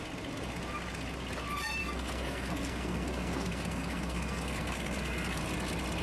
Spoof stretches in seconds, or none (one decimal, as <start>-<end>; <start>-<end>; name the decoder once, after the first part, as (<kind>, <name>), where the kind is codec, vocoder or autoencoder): 1.8-5.4 (codec, SNAC)